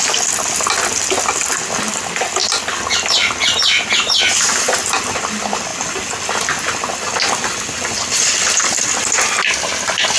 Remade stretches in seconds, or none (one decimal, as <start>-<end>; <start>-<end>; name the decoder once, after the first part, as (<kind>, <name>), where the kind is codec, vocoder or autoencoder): none